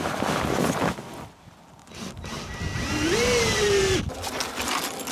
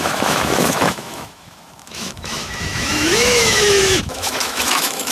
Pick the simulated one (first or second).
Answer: second